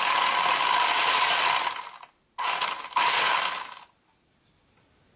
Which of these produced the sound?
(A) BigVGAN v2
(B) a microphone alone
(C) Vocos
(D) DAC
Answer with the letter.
B